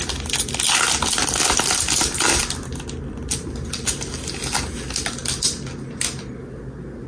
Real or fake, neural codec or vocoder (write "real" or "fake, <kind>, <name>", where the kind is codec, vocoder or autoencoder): real